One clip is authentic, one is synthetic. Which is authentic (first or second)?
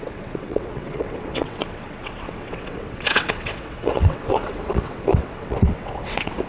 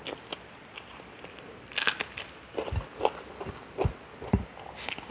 second